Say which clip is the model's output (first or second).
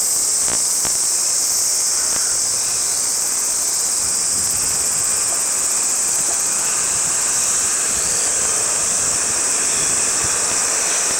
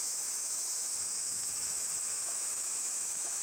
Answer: second